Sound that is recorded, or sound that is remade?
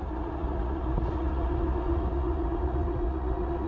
remade